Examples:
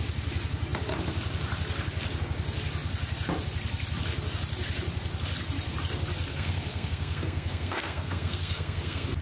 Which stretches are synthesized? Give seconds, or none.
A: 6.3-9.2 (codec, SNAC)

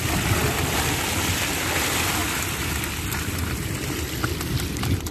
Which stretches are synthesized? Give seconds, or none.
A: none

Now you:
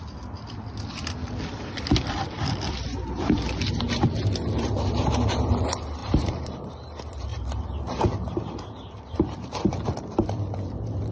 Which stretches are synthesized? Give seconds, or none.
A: 6.0-6.7 (vocoder, BigVGAN v2); 7.3-9.7

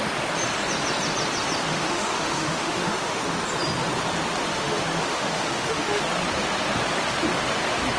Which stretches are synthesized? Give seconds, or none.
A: 1.7-3.2 (autoencoder, DAC-VAE); 4.5-6.0